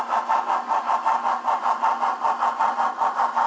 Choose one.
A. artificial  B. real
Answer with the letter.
B